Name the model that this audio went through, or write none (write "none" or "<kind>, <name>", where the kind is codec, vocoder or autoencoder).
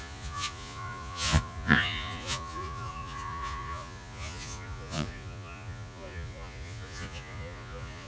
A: vocoder, Vocos